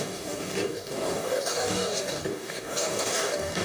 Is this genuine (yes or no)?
no